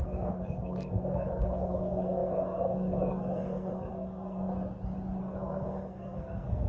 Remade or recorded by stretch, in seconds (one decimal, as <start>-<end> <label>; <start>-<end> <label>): 0.0-4.5 remade; 4.5-5.2 recorded; 5.2-6.7 remade